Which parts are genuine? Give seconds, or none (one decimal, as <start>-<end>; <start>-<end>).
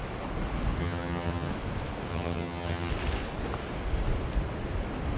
0.0-0.8; 1.5-2.1; 2.9-5.2